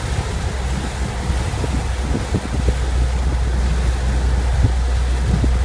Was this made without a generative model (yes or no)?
yes